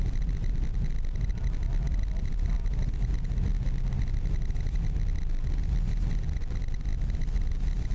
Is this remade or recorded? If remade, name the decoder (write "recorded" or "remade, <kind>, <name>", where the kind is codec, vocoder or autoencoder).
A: recorded